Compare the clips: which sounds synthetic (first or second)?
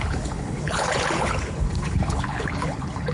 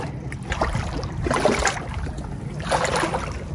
first